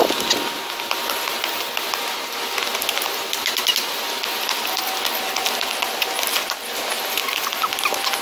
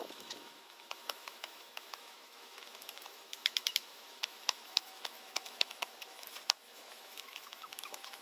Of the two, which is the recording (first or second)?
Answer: first